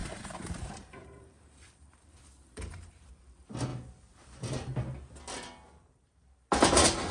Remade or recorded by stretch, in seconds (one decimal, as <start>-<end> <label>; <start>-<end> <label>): 0.0-3.1 remade; 3.1-7.1 recorded